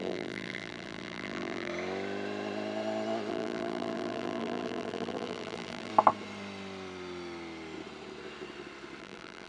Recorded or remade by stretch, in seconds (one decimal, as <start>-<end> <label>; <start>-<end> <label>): 0.0-1.7 remade; 1.7-3.3 recorded; 3.3-5.9 remade; 5.9-9.0 recorded; 9.0-9.5 remade